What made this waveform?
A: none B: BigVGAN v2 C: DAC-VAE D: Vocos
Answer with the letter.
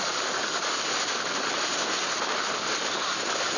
A